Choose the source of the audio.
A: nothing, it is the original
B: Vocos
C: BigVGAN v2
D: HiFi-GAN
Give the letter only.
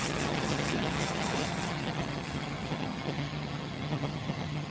D